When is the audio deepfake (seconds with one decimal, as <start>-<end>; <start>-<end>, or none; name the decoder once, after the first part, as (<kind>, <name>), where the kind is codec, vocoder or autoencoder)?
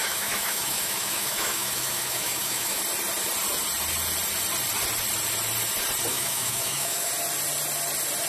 0.0-2.8 (autoencoder, DAC-VAE); 6.1-7.1